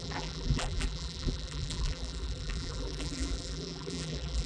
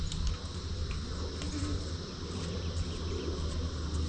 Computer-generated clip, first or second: first